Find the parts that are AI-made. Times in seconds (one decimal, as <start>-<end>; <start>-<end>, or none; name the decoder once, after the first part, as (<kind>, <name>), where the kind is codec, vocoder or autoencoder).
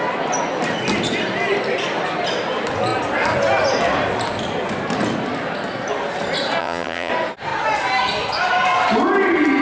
6.6-7.1 (vocoder, HiFi-GAN)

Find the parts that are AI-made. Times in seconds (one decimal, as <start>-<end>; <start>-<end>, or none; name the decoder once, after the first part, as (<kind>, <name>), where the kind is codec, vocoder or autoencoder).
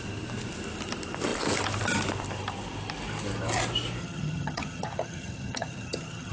4.0-6.3 (vocoder, HiFi-GAN)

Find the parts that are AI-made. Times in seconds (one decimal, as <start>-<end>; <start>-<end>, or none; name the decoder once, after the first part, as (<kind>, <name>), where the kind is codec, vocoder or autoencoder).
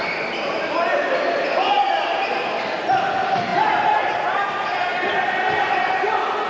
none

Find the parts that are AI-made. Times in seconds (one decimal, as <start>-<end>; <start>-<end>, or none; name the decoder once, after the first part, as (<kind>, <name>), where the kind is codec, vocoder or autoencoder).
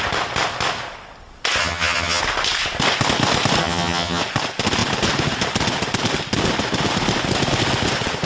1.6-2.2 (vocoder, HiFi-GAN); 3.6-4.2